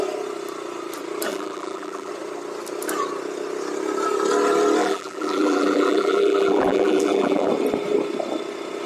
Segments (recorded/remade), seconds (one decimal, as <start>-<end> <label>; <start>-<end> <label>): 0.0-1.3 recorded; 1.3-2.1 remade; 2.1-4.8 recorded; 4.8-7.5 remade; 7.5-8.9 recorded